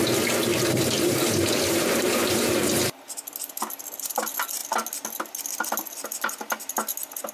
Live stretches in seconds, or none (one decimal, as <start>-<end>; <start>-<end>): 0.0-0.5; 3.0-7.3

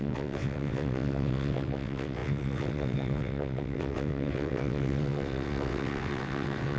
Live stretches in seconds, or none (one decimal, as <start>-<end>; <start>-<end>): none

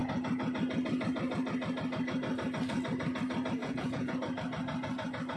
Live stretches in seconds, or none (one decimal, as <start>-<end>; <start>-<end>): 0.0-3.6; 4.1-5.4

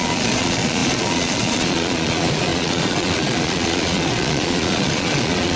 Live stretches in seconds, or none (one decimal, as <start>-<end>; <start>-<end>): none

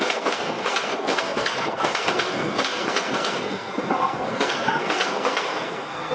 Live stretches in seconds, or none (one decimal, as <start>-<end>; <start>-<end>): none

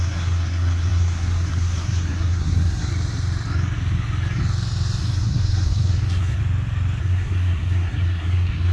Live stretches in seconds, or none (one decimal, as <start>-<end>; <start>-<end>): 2.9-5.0; 6.4-7.0

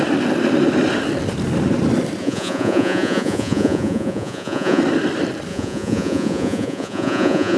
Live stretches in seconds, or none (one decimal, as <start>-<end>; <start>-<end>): 0.0-2.2; 4.8-5.5